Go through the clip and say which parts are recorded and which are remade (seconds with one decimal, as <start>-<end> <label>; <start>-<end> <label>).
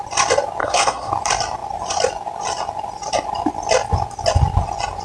0.0-0.6 recorded; 0.6-1.1 remade; 1.1-5.0 recorded